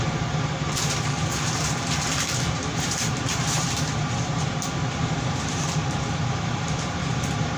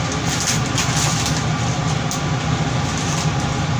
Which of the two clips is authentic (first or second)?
second